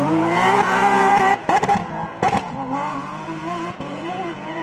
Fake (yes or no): yes